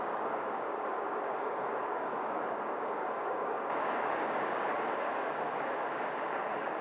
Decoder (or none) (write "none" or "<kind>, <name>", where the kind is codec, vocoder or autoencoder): codec, DAC